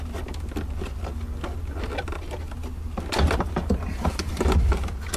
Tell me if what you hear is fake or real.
real